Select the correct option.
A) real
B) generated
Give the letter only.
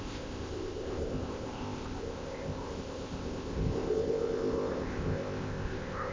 B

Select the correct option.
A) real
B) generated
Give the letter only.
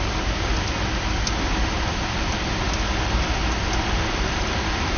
A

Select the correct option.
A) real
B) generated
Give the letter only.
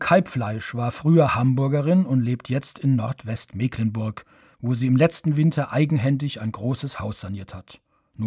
A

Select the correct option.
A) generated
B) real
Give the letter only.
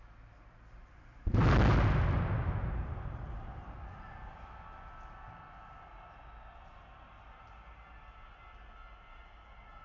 B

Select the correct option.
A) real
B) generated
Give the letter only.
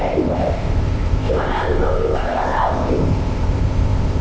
B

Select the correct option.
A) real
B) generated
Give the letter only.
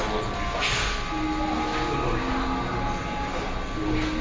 A